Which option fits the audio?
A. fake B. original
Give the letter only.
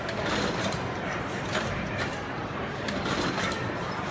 A